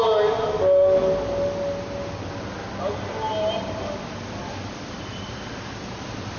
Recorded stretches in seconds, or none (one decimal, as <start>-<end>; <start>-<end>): 0.0-3.3; 5.3-6.4